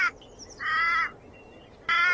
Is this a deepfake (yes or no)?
no